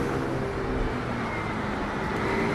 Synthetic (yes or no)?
no